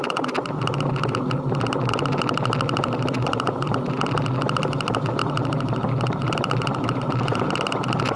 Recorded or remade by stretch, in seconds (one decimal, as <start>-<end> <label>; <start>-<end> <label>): 0.0-5.2 recorded; 5.2-7.4 remade; 7.4-8.2 recorded